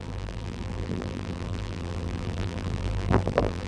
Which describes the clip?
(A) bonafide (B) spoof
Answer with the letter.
B